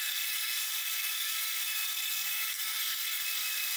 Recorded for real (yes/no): no